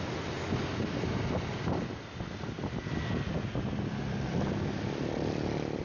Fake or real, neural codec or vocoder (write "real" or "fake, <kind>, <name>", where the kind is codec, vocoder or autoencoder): real